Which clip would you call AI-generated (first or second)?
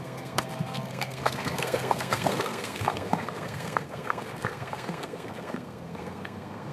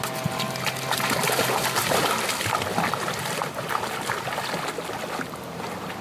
first